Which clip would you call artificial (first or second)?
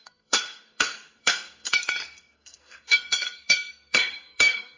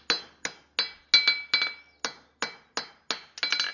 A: first